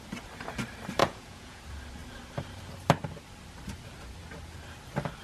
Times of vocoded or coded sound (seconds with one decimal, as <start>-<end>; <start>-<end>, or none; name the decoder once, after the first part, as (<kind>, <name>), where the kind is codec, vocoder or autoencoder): 1.0-1.6 (vocoder, Vocos)